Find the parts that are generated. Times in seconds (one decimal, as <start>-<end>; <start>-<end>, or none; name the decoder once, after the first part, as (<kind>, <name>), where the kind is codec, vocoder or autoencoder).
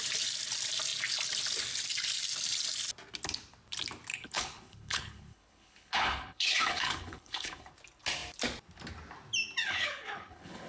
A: 4.1-7.7 (codec, HILCodec); 9.6-10.7